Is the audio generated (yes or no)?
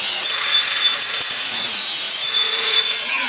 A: yes